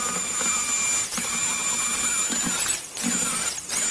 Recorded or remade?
recorded